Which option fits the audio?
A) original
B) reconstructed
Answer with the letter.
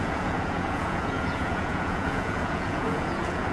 B